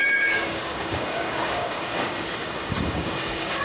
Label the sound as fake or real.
fake